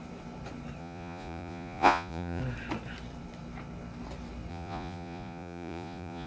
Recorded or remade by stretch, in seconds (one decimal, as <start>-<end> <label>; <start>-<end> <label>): 0.0-0.8 recorded; 0.8-2.4 remade; 2.4-4.5 recorded; 4.5-6.3 remade